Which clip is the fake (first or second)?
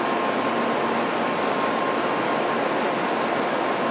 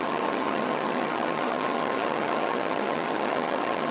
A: second